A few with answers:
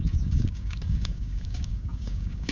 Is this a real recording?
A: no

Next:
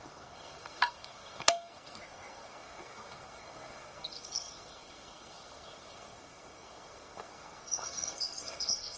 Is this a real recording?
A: no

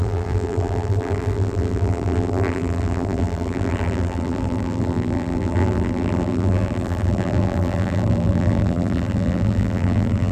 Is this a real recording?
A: no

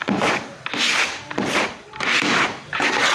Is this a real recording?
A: yes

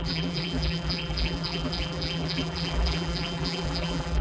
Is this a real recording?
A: no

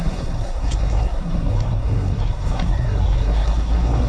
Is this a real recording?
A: no